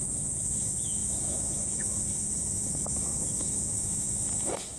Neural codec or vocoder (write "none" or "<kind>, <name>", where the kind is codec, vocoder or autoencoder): autoencoder, DAC-VAE